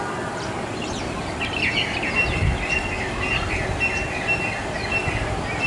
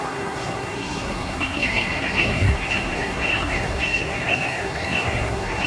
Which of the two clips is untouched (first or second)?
first